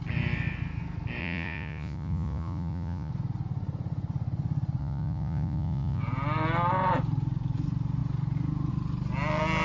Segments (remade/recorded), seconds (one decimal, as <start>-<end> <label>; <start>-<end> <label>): 0.0-1.2 recorded; 1.2-3.1 remade; 3.1-4.8 recorded; 4.8-6.0 remade; 6.0-9.6 recorded